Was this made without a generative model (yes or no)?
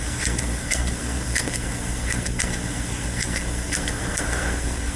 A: no